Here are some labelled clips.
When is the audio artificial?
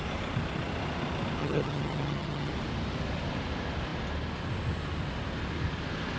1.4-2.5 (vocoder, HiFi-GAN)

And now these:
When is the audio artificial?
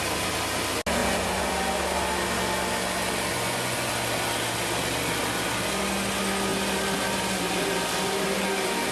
1.0-1.5 (vocoder, Vocos); 3.3-3.9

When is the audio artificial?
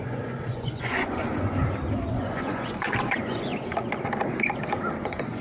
0.0-1.6 (vocoder, Vocos); 2.1-3.5; 5.0-5.4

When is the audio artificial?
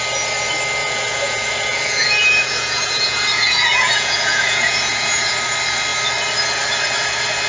0.8-5.3 (vocoder, Vocos)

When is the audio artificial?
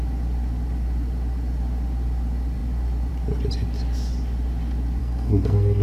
5.0-5.8 (codec, SNAC)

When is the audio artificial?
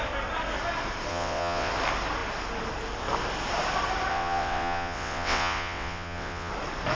1.1-1.7 (vocoder, WaveNeXt); 4.1-6.5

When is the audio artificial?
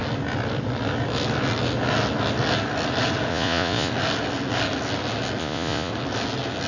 3.3-3.9 (vocoder, Vocos); 5.4-5.9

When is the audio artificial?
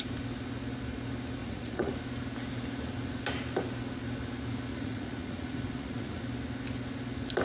1.4-1.9 (vocoder, Vocos); 4.7-6.2